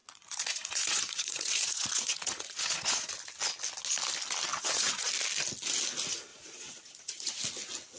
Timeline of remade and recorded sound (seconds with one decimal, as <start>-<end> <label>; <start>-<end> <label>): 0.0-3.1 remade; 3.1-4.6 recorded; 4.6-5.1 remade; 5.1-6.3 recorded; 6.3-7.4 remade; 7.4-8.0 recorded